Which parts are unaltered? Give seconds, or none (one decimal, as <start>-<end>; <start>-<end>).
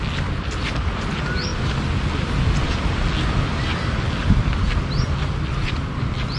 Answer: 0.0-6.4